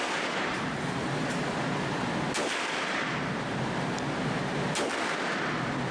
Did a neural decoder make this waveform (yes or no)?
no